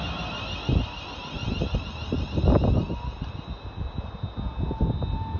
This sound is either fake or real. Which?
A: real